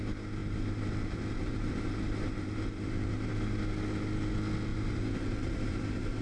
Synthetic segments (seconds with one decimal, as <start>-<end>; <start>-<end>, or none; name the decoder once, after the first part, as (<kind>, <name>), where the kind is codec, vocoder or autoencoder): 0.4-3.6 (vocoder, BigVGAN v2); 4.7-6.2